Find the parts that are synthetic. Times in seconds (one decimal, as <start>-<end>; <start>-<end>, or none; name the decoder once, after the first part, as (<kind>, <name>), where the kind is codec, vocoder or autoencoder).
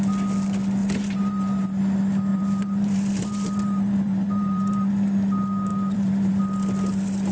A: 0.8-1.8 (vocoder, BigVGAN v2); 2.3-4.9; 5.7-6.4